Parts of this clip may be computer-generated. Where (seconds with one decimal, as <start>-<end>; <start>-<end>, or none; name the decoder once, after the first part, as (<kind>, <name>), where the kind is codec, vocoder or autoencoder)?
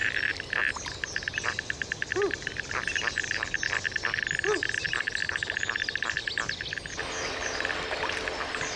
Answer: none